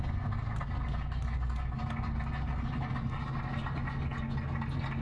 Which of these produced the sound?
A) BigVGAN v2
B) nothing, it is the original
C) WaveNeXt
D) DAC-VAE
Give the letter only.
B